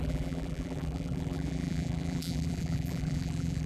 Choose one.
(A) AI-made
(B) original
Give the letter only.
A